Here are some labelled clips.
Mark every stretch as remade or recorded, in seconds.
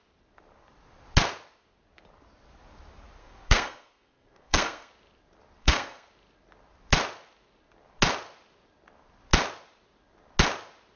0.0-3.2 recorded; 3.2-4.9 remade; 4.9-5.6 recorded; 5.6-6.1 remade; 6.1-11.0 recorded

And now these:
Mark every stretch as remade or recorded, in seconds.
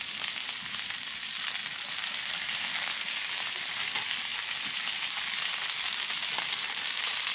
0.0-7.3 recorded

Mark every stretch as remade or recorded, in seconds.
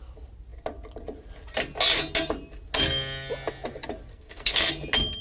0.0-4.1 recorded; 4.1-4.7 remade; 4.7-5.2 recorded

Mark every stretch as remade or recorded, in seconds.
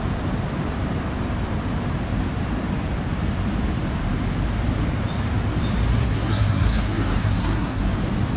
0.0-5.9 recorded; 5.9-7.8 remade; 7.8-8.4 recorded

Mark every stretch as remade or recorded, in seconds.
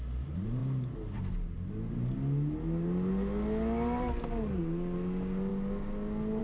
0.0-6.4 recorded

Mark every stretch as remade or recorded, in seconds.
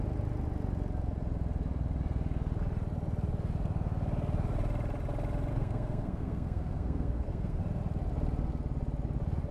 0.0-5.5 recorded; 5.5-7.6 remade; 7.6-9.5 recorded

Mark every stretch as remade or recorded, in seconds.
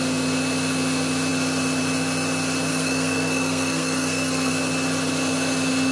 0.0-2.7 recorded; 2.7-4.5 remade; 4.5-5.9 recorded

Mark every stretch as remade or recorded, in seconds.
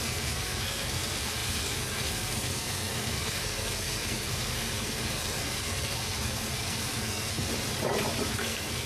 0.0-7.5 remade; 7.5-8.3 recorded; 8.3-8.9 remade